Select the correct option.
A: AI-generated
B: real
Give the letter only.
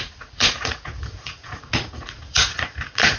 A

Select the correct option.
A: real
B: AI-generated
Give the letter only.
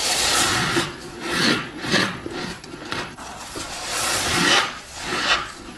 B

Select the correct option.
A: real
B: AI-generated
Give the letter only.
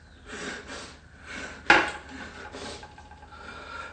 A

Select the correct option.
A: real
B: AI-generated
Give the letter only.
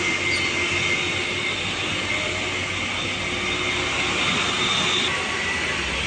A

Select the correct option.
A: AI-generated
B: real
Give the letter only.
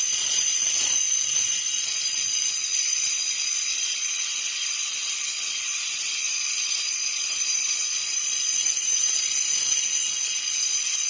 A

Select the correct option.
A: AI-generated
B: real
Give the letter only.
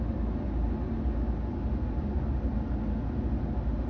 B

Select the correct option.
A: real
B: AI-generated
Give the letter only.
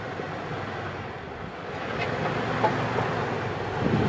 A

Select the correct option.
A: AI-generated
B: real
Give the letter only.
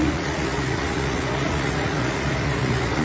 A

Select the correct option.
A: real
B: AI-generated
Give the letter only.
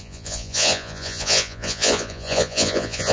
B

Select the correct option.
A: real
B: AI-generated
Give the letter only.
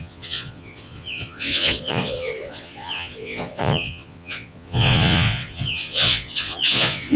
B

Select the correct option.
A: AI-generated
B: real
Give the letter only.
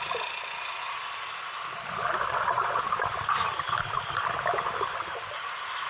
B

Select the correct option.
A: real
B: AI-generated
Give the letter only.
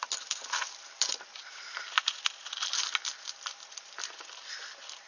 A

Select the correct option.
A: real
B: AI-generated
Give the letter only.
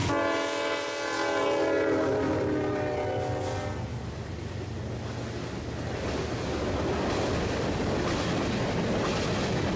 A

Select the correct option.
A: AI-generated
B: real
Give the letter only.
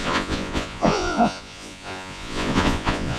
A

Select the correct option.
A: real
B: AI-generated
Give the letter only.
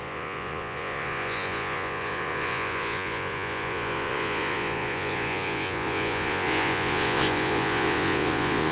B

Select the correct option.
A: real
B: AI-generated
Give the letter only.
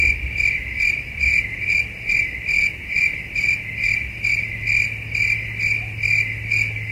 A